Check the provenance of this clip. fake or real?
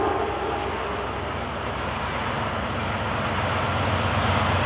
real